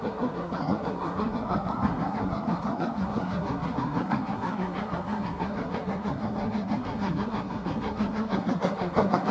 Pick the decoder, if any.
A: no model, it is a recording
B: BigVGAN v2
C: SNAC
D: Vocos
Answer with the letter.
C